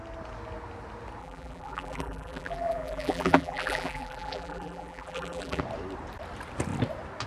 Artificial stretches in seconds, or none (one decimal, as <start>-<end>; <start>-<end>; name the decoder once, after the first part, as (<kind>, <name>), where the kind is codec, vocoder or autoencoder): 1.2-5.6 (vocoder, BigVGAN v2)